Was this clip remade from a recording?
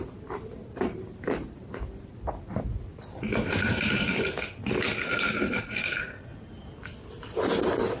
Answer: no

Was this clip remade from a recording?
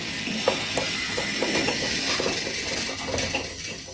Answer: no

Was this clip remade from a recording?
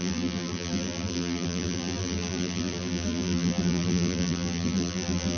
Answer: yes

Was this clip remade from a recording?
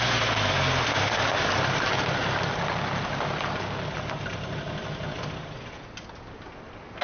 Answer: no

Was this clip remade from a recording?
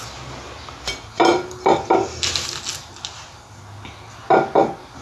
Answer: no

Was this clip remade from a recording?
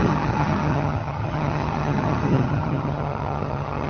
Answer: yes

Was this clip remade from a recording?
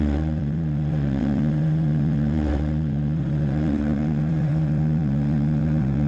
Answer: yes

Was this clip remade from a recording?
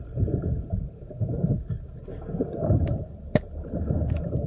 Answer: no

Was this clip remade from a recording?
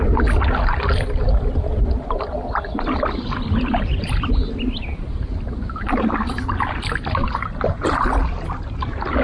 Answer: no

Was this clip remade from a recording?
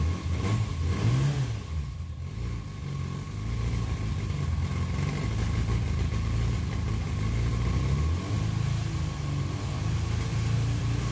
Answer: no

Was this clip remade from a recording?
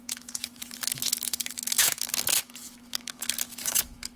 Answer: yes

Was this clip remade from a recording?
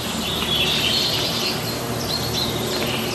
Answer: yes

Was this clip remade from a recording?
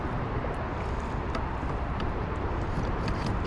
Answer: yes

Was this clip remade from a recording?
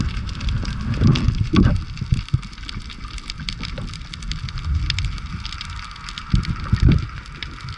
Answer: no